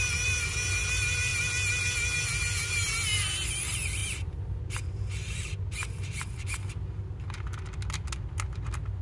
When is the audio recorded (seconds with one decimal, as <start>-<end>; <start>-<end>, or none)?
0.0-4.0; 6.6-9.0